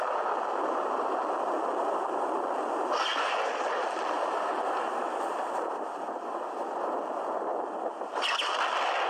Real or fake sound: real